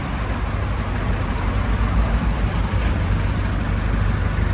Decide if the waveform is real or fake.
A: real